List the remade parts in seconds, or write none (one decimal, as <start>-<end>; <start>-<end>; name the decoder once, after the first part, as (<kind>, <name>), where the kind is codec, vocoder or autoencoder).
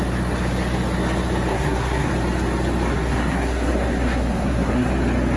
1.5-2.1 (codec, SNAC); 2.9-4.9